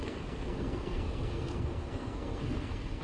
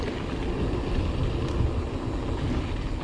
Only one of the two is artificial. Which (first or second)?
first